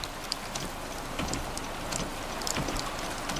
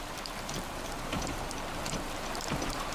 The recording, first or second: first